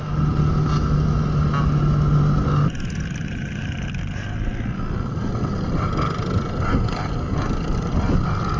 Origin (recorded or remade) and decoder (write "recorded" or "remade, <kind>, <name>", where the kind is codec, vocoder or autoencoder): recorded